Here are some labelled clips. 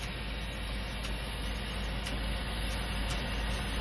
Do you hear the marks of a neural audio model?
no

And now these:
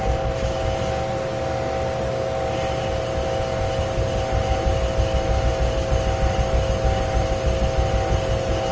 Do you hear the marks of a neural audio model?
no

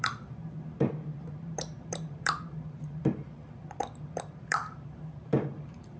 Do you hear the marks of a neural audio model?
yes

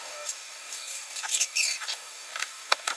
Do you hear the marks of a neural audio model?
yes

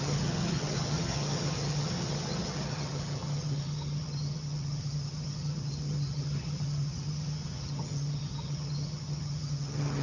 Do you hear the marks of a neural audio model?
yes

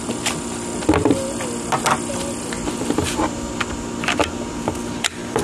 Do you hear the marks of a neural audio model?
no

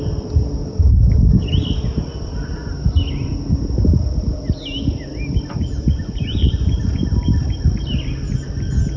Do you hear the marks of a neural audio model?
no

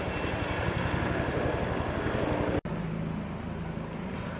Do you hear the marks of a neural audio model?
no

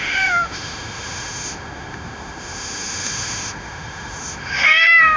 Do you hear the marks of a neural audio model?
yes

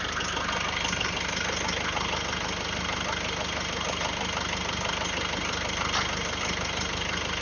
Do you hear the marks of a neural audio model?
no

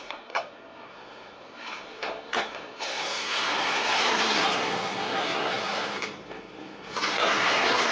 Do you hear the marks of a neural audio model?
yes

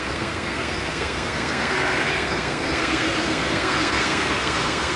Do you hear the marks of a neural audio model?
yes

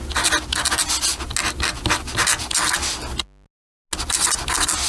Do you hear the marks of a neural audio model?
no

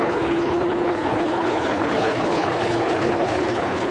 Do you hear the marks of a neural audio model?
yes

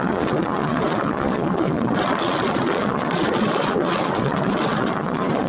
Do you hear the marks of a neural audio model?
yes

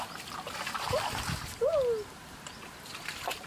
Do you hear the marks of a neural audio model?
no